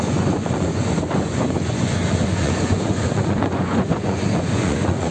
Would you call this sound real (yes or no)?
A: no